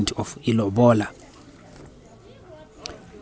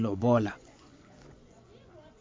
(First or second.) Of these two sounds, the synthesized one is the second